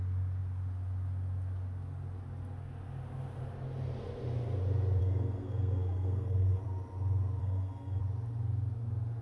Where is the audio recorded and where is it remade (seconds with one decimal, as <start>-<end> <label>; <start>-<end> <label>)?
0.0-5.0 recorded; 5.0-6.6 remade; 6.6-7.4 recorded; 7.4-8.0 remade; 8.0-9.2 recorded